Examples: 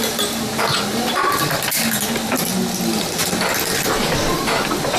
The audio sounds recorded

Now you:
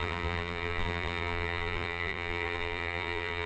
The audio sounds remade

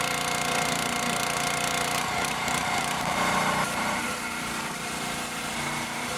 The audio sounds remade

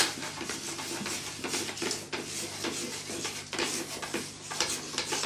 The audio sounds recorded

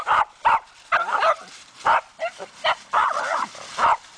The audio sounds remade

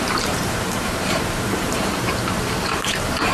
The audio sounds remade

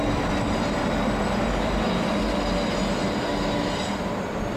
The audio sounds recorded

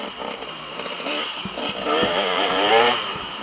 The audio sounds remade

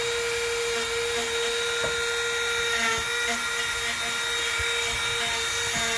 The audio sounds recorded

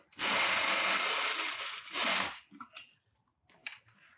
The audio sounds recorded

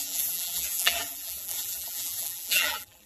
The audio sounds remade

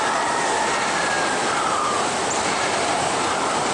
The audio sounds recorded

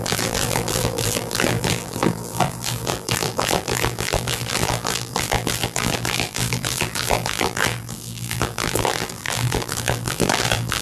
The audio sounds remade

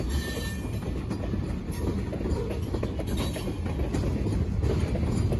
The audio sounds recorded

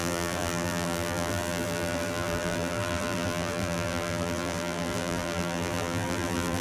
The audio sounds remade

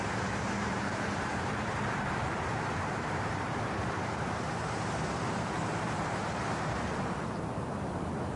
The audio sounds remade